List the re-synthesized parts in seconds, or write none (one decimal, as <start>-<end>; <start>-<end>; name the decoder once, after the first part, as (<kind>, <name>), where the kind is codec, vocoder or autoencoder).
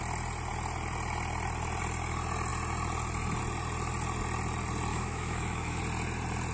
4.9-5.8 (autoencoder, DAC-VAE)